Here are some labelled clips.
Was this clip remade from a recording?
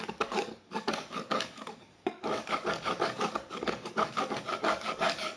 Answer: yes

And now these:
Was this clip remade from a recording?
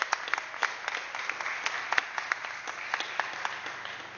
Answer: no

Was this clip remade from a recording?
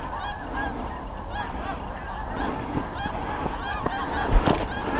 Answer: no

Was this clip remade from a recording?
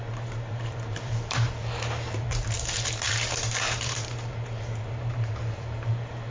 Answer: yes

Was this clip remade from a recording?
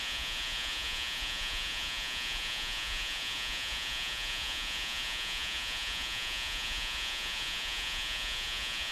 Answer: yes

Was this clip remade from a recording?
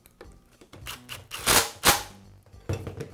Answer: no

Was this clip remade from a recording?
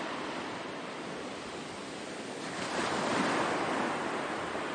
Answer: yes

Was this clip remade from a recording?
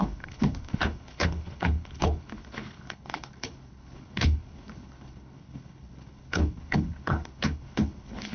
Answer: yes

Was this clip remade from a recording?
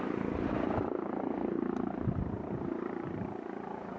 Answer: yes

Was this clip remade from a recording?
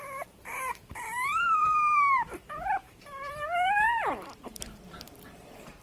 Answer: yes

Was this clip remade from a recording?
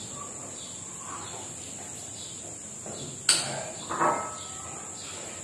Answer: no